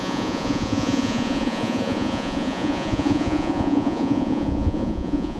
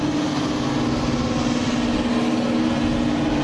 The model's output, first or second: first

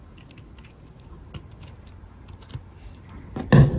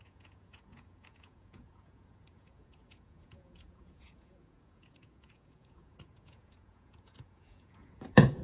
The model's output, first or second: second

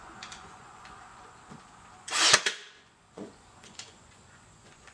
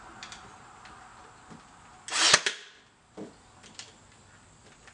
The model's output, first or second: first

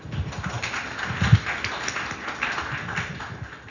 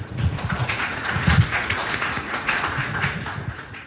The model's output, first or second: second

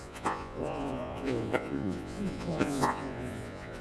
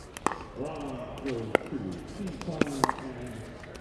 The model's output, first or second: first